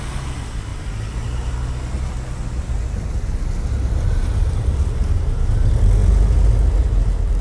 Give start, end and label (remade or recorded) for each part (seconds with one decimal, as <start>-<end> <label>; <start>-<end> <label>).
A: 0.0-7.4 recorded